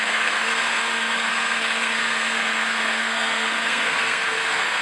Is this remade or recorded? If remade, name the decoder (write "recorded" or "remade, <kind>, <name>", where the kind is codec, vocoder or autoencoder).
remade, codec, SNAC